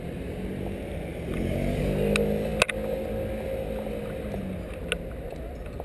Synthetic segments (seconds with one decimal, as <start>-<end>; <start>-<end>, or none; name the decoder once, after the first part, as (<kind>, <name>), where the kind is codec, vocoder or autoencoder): 1.1-1.8 (vocoder, BigVGAN v2)